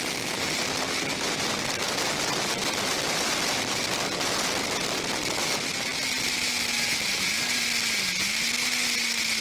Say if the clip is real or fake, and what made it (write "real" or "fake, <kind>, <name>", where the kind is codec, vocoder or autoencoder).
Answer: real